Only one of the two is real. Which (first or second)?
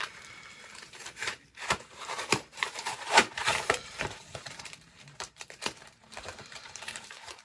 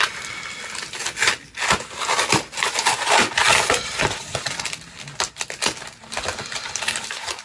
second